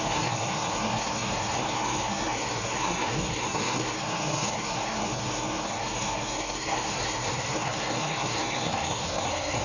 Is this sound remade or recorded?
remade